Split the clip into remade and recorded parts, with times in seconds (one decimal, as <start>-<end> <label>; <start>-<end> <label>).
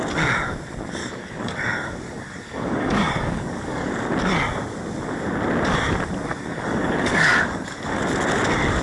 0.0-1.0 recorded; 1.0-3.9 remade; 3.9-6.3 recorded; 6.3-8.0 remade; 8.0-8.8 recorded